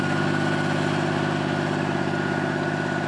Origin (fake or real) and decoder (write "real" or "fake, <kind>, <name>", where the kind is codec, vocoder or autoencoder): real